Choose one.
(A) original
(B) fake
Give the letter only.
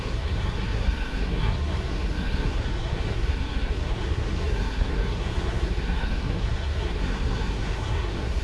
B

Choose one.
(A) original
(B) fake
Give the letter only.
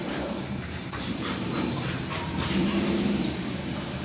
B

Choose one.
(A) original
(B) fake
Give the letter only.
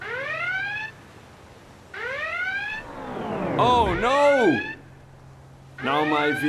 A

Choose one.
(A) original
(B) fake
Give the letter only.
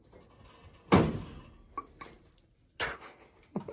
A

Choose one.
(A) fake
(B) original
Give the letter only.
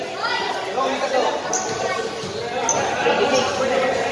B